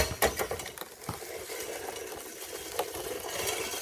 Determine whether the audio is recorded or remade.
recorded